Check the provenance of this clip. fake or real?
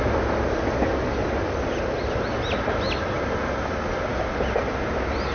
real